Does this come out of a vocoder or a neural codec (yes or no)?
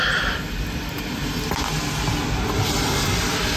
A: no